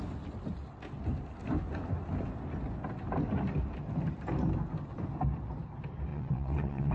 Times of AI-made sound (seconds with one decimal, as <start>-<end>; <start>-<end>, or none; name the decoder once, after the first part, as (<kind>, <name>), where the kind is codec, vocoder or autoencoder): 6.1-6.9 (vocoder, WaveNeXt)